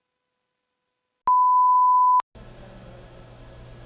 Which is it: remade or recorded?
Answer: recorded